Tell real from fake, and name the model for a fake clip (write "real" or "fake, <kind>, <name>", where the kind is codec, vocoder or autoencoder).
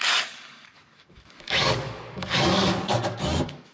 fake, codec, DAC